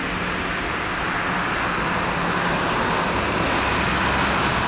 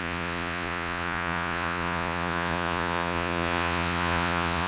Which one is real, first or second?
first